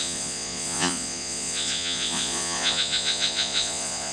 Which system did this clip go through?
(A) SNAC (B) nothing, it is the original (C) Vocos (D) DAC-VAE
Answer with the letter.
C